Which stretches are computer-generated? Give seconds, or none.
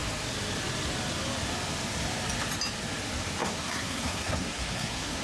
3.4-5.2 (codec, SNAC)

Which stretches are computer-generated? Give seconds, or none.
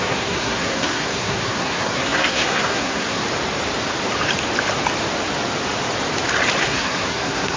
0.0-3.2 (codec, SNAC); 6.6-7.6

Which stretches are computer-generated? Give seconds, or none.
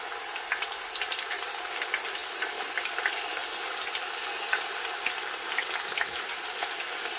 none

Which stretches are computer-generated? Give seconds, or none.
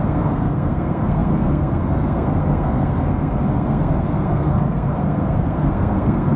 0.0-6.4 (codec, SNAC)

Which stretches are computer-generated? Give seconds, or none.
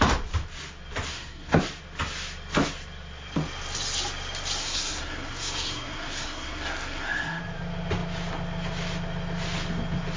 1.1-1.6 (codec, SNAC); 4.6-7.4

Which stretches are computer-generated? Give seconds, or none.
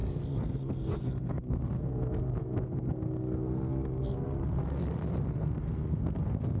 0.0-4.8 (codec, SNAC); 5.4-6.6